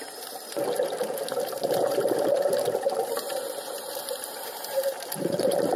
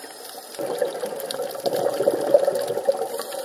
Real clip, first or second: second